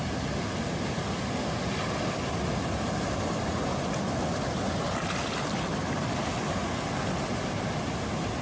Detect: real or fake real